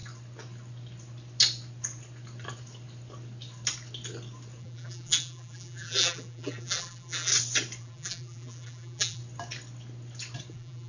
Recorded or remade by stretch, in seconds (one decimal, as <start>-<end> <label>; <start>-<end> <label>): 0.0-4.6 recorded; 4.6-7.3 remade; 7.3-7.8 recorded; 7.8-9.2 remade; 9.2-10.5 recorded; 10.5-10.9 remade